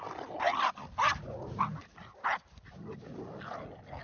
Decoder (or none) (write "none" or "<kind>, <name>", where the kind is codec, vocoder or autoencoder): none